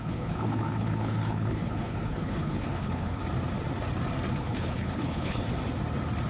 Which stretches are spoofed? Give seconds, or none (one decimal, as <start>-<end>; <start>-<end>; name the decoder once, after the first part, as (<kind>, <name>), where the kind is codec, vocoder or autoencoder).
0.0-3.2 (codec, HILCodec); 4.4-5.4